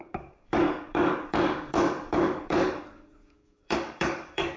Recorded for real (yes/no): no